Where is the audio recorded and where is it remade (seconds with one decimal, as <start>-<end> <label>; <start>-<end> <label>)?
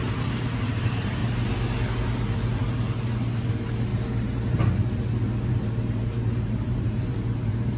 0.0-1.2 remade; 1.2-3.5 recorded; 3.5-3.9 remade; 3.9-5.5 recorded; 5.5-7.8 remade